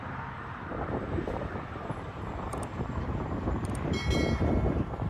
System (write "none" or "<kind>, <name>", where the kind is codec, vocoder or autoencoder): vocoder, BigVGAN v2